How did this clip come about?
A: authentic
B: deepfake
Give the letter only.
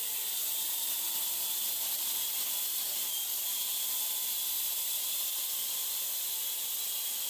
A